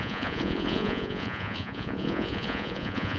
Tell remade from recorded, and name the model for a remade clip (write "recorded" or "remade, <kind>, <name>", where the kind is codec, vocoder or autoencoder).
remade, vocoder, Vocos